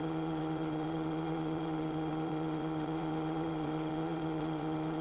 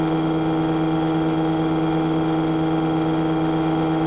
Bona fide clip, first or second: second